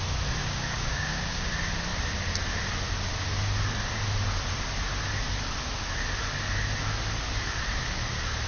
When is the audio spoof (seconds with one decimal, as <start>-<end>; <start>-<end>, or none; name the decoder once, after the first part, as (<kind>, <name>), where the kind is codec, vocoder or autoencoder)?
0.4-1.5 (codec, DAC)